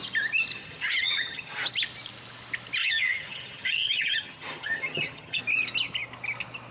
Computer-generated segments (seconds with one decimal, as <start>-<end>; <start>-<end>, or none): 0.5-1.7; 2.8-5.4